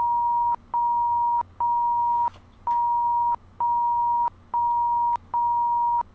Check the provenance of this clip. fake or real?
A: real